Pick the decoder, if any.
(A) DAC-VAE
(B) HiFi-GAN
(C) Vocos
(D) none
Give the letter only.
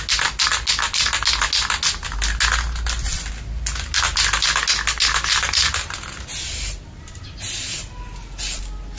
D